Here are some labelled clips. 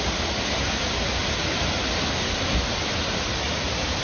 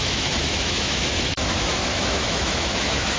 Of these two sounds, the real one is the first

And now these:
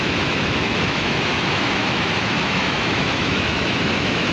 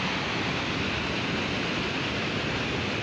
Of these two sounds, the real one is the second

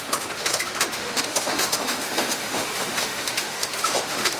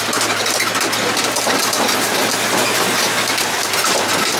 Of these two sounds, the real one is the second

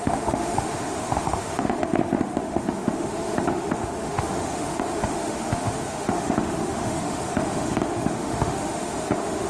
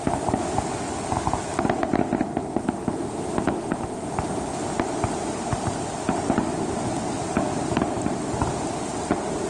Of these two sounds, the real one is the second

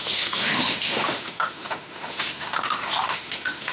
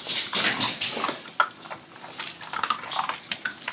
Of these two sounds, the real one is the second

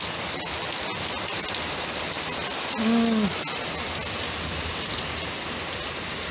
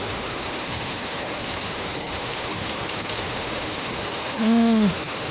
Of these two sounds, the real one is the first